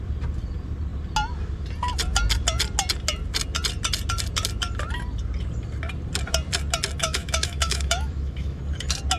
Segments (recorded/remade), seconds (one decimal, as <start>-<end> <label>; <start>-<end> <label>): 0.0-7.0 recorded; 7.0-8.6 remade; 8.6-9.2 recorded